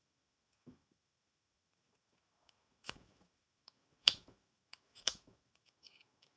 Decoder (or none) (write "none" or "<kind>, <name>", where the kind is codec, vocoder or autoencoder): autoencoder, DAC-VAE